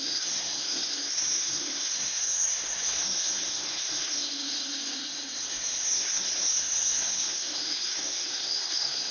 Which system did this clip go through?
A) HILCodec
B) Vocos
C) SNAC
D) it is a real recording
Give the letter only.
C